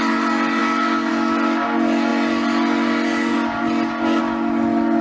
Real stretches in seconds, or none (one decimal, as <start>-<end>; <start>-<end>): 0.0-5.0